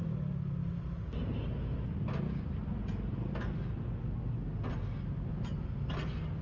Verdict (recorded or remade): recorded